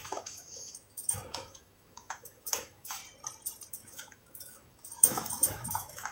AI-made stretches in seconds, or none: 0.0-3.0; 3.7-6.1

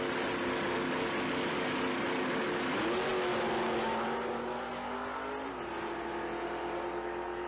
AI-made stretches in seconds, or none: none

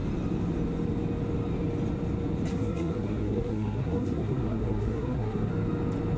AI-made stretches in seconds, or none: 2.5-5.5

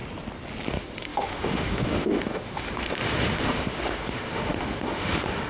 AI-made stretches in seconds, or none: 0.7-5.5

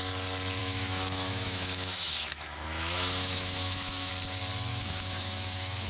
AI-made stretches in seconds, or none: 0.6-4.1; 4.7-5.9

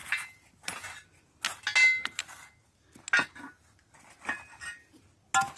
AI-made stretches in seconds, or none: 3.8-4.3

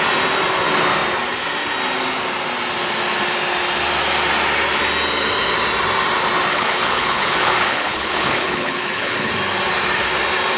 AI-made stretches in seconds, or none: 6.5-9.3